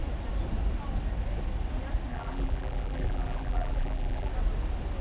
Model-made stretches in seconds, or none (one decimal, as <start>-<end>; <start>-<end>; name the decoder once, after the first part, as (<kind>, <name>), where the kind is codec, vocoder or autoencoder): 2.1-4.3 (vocoder, BigVGAN v2)